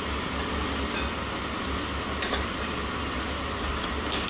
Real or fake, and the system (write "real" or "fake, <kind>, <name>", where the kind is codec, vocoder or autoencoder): real